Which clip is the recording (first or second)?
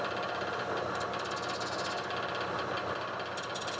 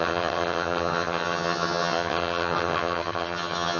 first